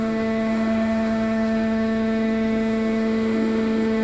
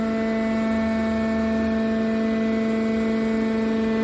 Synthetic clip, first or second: first